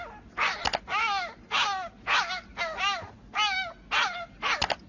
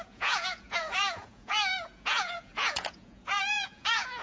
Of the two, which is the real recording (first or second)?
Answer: first